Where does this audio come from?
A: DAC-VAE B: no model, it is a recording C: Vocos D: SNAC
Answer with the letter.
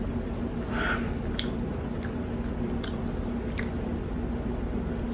B